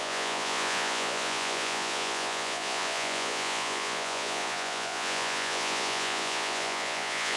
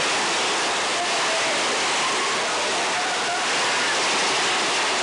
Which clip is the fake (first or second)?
first